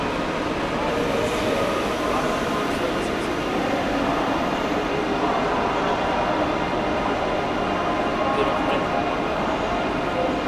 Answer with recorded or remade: recorded